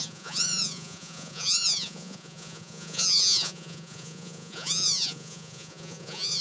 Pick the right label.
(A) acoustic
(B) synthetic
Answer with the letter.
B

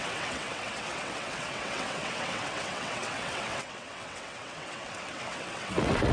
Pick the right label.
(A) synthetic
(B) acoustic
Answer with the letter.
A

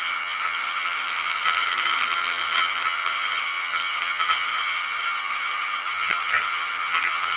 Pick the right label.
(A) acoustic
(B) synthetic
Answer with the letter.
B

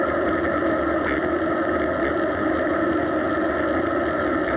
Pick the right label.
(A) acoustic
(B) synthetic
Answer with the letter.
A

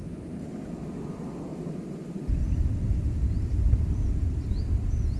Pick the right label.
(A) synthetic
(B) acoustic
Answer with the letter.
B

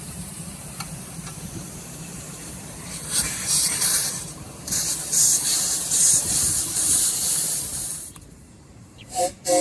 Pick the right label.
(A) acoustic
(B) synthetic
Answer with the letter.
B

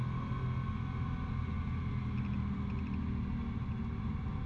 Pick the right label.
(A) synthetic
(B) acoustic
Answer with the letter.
B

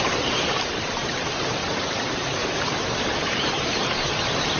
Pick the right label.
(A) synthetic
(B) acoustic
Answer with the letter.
A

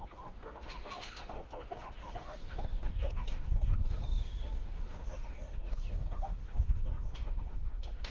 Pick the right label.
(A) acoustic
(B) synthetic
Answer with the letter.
B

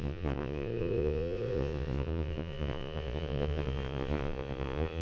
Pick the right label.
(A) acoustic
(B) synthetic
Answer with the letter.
B